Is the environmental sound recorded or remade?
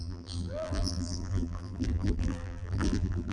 remade